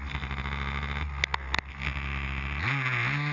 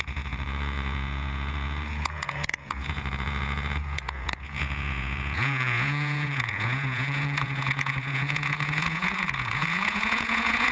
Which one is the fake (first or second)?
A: second